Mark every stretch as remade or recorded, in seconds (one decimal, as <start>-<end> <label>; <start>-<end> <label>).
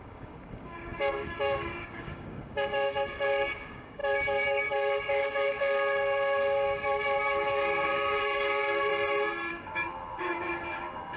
0.0-8.9 remade; 8.9-9.5 recorded; 9.5-11.2 remade